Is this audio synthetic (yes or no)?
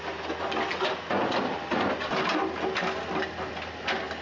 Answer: no